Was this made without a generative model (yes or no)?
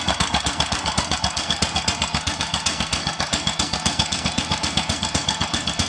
no